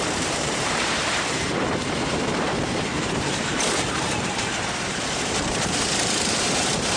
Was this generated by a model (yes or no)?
yes